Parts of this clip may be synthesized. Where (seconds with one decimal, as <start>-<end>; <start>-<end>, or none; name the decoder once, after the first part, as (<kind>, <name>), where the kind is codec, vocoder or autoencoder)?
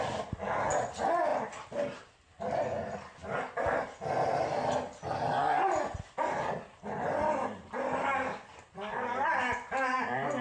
1.3-2.0 (vocoder, BigVGAN v2)